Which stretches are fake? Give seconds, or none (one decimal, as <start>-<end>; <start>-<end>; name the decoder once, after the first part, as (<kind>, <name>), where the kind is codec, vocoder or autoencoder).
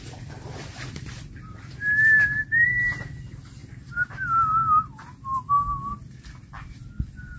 none